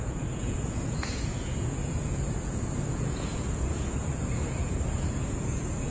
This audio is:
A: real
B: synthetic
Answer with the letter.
B